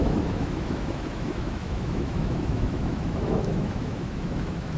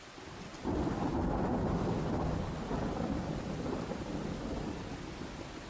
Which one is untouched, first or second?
second